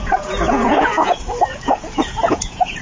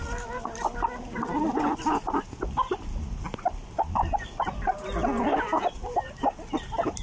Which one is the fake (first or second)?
first